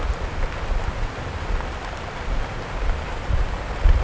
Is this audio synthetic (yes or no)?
no